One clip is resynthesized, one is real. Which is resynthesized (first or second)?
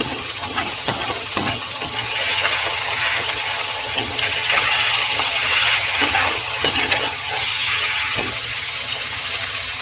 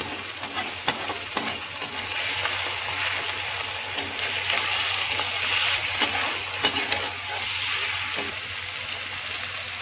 first